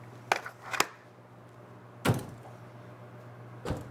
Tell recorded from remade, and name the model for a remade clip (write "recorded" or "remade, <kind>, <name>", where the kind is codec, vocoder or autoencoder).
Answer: recorded